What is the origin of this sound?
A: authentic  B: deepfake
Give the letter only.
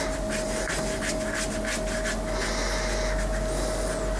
A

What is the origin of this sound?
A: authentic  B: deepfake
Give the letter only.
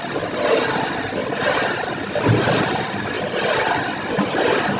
A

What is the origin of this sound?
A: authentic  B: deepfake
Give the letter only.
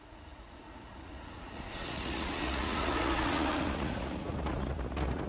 B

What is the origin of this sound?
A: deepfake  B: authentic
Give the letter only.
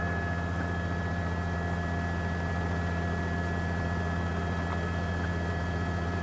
B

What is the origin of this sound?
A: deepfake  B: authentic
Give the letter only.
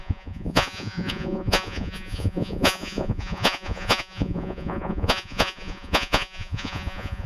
A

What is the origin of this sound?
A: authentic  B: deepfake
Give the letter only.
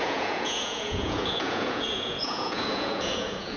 B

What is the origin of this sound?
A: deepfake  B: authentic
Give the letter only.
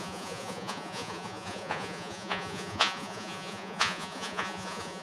A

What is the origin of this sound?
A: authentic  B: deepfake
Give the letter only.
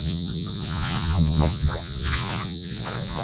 B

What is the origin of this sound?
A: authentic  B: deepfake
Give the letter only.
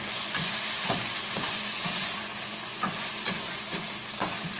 B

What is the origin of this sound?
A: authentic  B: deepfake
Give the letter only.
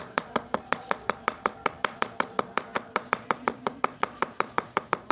B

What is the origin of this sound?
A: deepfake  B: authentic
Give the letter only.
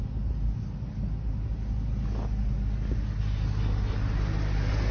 B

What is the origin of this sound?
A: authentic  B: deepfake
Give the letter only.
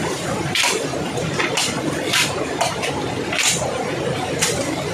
A